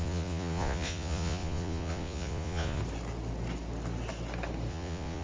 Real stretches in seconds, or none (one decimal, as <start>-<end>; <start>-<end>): 2.8-4.7